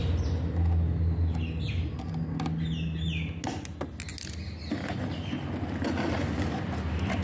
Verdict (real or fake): real